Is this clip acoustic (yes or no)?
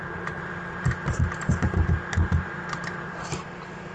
no